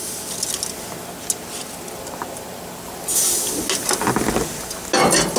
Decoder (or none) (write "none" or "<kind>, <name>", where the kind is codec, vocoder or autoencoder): none